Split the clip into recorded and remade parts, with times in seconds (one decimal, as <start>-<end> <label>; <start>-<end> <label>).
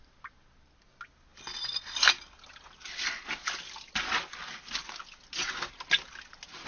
0.0-6.7 recorded